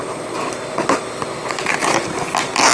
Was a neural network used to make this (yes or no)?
no